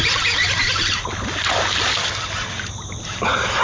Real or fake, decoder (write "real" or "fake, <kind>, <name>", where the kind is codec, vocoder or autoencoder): real